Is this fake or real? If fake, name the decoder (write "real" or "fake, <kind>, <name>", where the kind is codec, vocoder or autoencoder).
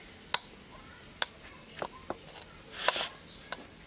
real